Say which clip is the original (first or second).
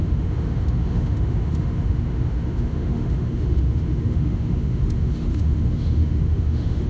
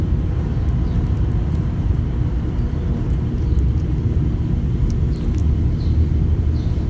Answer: second